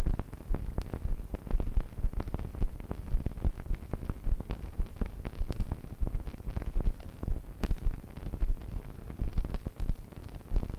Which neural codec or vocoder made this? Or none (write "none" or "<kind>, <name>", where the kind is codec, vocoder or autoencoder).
none